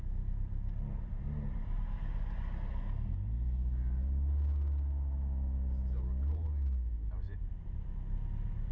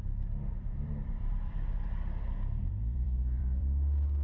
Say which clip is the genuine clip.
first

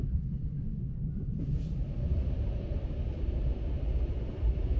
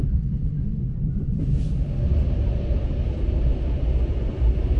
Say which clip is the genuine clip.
second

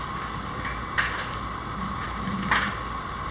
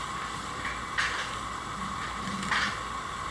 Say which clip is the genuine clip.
first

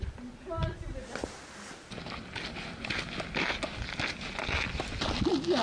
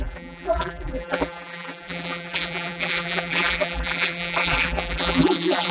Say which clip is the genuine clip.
first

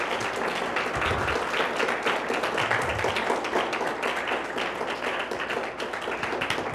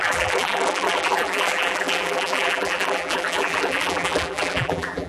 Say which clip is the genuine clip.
first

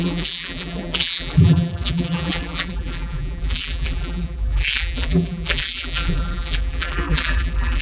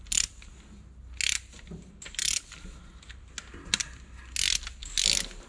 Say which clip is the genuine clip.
second